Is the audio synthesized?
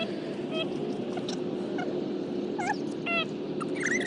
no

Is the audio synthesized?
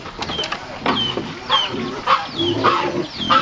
no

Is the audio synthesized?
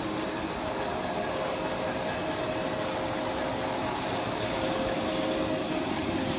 no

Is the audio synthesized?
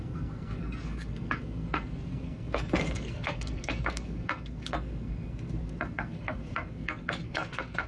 yes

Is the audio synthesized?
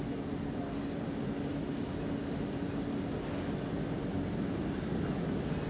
no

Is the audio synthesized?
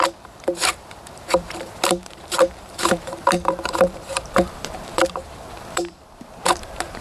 yes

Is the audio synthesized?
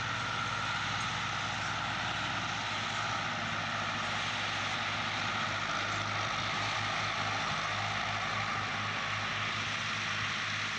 no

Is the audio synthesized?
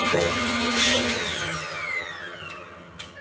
yes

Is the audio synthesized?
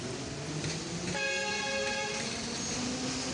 no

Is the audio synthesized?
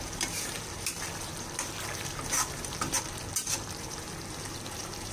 yes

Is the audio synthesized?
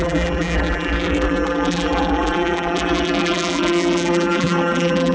yes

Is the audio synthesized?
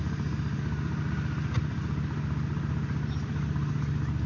no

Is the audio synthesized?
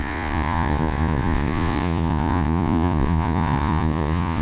yes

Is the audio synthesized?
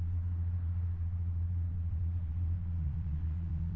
yes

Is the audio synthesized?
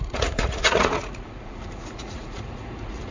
yes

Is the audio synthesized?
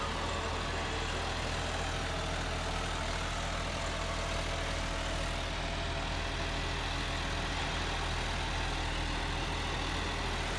no